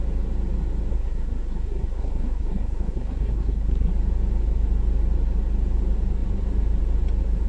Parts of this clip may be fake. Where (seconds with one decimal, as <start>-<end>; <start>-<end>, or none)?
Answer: 0.9-3.9